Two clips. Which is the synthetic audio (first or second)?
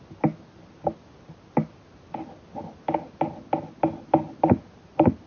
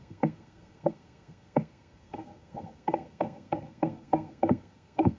second